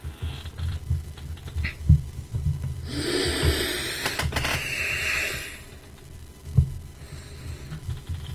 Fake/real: real